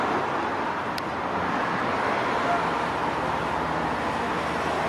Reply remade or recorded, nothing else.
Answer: recorded